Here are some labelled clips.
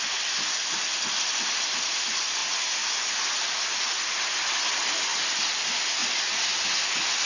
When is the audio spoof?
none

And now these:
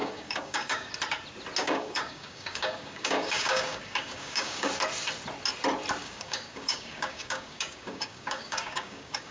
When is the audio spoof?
0.0-0.9 (codec, DAC); 1.6-4.7; 6.0-9.3

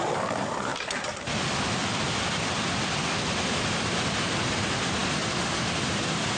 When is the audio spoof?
none